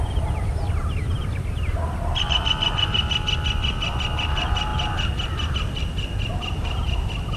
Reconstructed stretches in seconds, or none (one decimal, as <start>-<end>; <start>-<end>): none